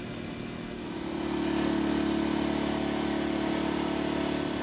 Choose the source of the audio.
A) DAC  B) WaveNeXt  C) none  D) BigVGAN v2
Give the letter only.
C